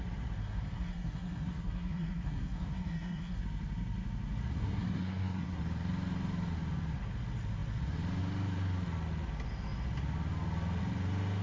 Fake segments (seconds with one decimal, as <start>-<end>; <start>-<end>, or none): 0.4-3.4; 4.6-5.6